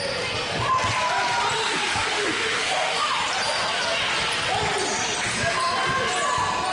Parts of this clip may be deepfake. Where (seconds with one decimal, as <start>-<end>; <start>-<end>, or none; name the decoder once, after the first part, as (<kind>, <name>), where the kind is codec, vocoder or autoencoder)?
1.6-3.0 (autoencoder, DAC-VAE)